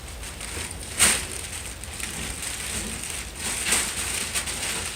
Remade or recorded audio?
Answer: recorded